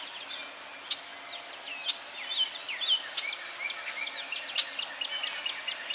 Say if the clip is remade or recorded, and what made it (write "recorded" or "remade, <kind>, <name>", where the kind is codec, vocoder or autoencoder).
recorded